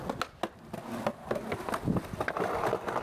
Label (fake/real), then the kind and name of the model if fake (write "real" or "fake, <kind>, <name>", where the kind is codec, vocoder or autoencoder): real